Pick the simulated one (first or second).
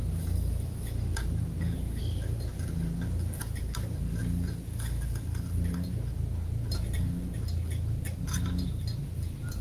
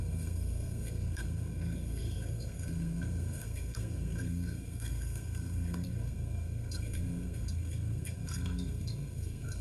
second